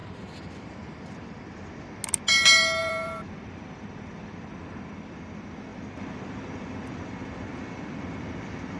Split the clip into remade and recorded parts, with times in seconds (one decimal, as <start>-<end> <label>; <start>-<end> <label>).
0.0-1.7 remade; 1.7-2.8 recorded; 2.8-5.2 remade; 5.2-5.7 recorded; 5.7-8.2 remade; 8.2-8.8 recorded